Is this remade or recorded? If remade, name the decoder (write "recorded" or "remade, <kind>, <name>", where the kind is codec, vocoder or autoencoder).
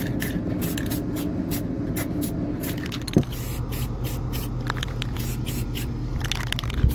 recorded